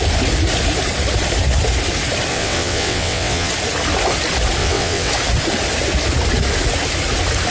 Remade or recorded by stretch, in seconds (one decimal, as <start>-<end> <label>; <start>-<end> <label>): 0.0-2.3 recorded; 2.3-3.5 remade; 3.5-4.6 recorded; 4.6-5.1 remade; 5.1-7.5 recorded